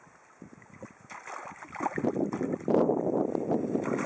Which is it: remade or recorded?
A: recorded